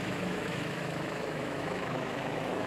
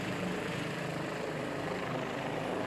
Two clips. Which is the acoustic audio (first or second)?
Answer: second